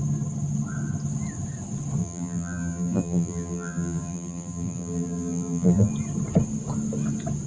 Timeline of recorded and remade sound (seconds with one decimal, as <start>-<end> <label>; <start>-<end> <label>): 0.0-2.0 recorded; 2.0-5.9 remade; 5.9-7.5 recorded